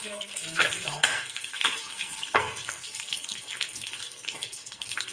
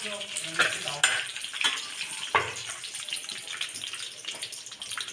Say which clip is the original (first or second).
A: second